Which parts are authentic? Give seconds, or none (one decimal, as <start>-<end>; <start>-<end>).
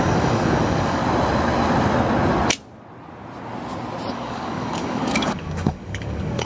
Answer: 1.0-4.1